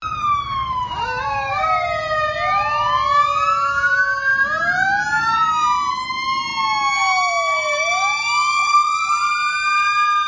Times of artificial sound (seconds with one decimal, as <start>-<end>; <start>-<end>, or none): 8.6-9.3

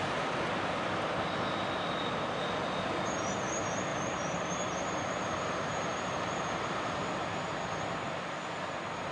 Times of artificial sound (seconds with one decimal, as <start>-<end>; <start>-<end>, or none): 3.9-9.1

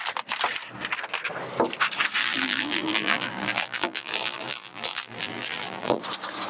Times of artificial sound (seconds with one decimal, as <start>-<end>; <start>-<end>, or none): 2.2-6.0

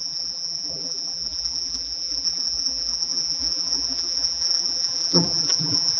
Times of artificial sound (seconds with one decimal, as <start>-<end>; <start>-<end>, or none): 0.0-6.0

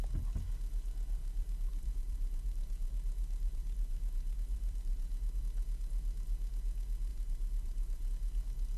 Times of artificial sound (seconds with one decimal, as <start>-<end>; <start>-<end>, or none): 1.2-5.4; 7.1-8.1